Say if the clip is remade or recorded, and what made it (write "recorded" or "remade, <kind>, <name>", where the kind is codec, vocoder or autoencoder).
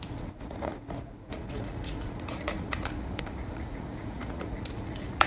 remade, vocoder, Vocos